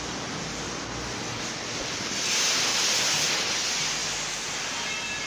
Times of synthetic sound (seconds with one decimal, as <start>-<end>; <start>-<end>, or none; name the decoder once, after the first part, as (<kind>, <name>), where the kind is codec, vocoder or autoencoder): 2.7-3.3 (vocoder, BigVGAN v2)